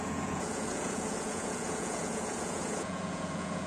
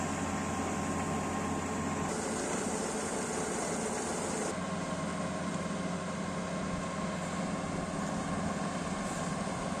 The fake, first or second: first